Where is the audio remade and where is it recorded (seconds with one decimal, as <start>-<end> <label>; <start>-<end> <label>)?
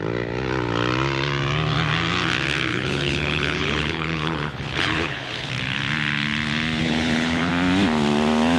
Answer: 0.0-2.7 recorded; 2.7-5.5 remade; 5.5-6.8 recorded; 6.8-7.5 remade; 7.5-8.6 recorded